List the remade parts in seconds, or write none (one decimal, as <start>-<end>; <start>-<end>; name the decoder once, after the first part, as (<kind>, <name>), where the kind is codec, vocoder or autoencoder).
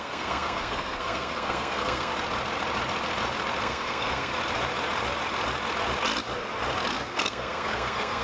0.0-2.1 (codec, SNAC); 3.6-4.3; 6.9-8.2